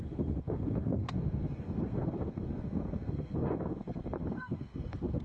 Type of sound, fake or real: fake